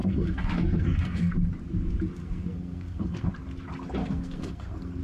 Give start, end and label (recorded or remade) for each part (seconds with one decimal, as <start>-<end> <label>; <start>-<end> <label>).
0.0-1.3 remade; 1.3-2.2 recorded; 2.2-3.3 remade; 3.3-4.0 recorded; 4.0-5.0 remade